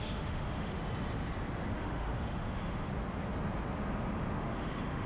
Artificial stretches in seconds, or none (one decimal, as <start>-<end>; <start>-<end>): 0.0-0.8; 1.7-2.9; 4.4-5.1